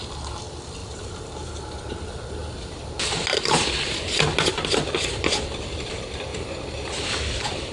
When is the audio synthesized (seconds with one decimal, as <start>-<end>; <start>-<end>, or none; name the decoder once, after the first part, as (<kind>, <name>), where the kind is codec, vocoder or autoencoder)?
0.8-1.6 (vocoder, BigVGAN v2)